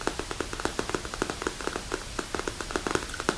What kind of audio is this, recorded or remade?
recorded